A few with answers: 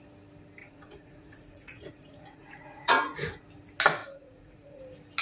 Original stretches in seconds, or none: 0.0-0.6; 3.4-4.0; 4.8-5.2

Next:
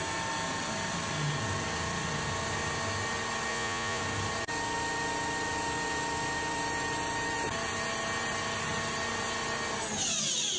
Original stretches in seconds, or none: 0.0-3.5; 4.0-10.6

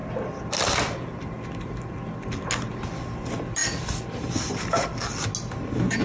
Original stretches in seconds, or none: 0.0-6.0

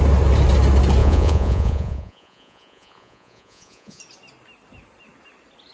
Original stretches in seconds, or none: 0.0-1.0; 4.0-5.7

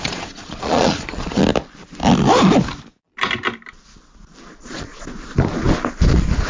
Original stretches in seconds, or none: 1.4-4.5; 4.9-6.1

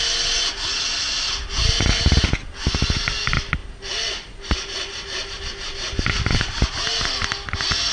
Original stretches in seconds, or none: 0.0-7.9